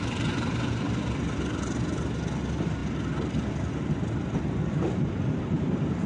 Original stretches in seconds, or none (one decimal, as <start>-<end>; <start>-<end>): 0.0-6.1